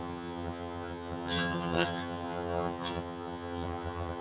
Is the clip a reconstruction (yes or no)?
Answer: yes